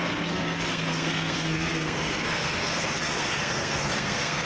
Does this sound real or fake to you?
fake